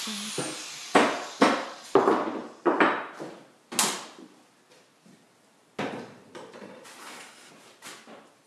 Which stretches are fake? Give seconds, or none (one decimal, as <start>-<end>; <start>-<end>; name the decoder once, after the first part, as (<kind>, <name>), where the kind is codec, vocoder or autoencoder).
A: 7.0-7.5 (codec, SNAC)